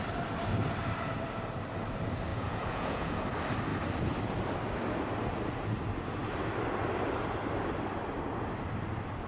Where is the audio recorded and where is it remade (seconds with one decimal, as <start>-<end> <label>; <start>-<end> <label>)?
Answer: 0.0-2.3 recorded; 2.3-3.2 remade; 3.2-9.3 recorded